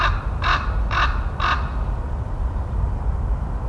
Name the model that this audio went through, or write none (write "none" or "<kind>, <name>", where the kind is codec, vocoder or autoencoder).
none